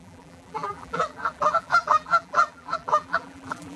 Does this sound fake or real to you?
fake